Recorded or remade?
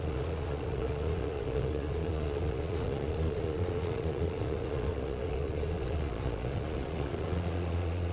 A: remade